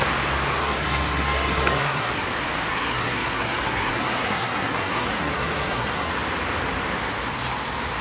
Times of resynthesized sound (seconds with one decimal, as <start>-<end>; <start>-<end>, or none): 0.6-2.2; 2.7-6.1